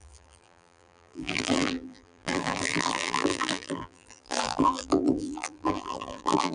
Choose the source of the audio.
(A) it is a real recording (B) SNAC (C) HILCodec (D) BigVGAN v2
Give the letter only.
D